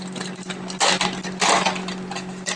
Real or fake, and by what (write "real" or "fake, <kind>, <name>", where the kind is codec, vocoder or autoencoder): real